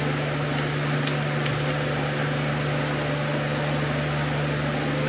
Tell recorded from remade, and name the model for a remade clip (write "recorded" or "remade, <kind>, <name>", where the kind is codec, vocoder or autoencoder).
recorded